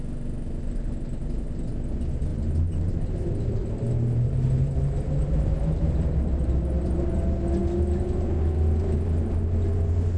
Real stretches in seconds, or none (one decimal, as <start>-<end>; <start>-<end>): 0.0-2.3; 2.9-3.6; 7.0-10.2